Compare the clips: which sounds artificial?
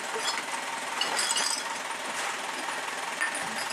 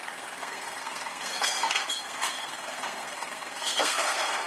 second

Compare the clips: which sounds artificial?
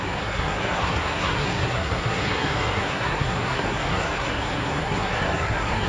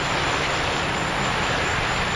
first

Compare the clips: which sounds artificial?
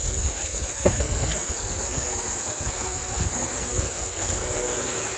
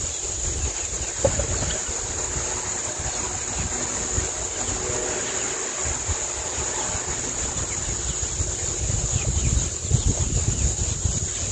first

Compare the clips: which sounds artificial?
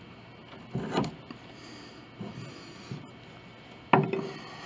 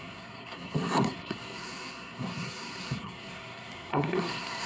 second